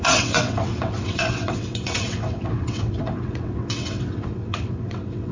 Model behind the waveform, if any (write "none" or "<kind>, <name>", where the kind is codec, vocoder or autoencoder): vocoder, WaveNeXt